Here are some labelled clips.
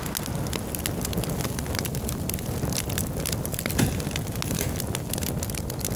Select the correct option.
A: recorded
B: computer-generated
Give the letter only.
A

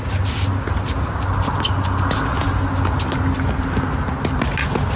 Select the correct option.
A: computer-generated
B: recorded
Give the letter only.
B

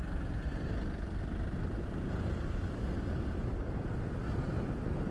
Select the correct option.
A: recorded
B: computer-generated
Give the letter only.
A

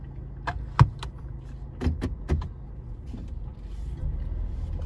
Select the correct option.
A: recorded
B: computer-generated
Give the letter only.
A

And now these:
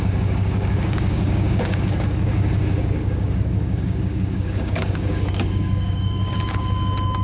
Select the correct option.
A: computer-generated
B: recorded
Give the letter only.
A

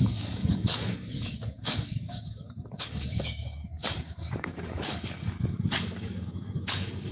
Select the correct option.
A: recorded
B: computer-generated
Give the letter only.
B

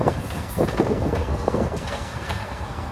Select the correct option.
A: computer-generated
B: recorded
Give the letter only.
A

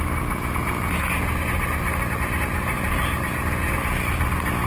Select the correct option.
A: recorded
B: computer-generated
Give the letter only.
A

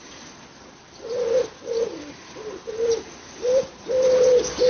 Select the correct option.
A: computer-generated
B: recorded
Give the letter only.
B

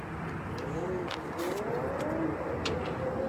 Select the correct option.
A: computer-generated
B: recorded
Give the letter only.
B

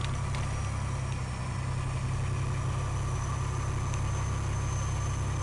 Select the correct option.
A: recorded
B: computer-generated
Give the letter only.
A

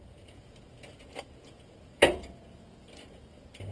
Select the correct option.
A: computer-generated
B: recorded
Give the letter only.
A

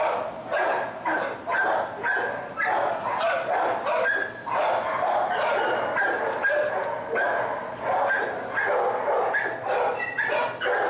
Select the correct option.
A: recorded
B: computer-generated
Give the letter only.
A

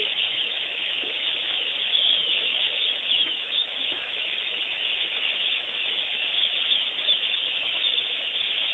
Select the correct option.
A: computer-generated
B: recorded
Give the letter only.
A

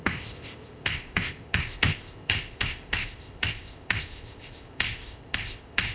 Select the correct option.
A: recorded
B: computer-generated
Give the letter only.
B